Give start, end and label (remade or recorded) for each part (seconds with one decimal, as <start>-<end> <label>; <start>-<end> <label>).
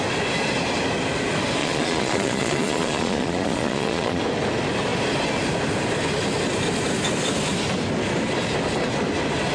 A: 0.0-1.6 recorded; 1.6-4.2 remade; 4.2-9.5 recorded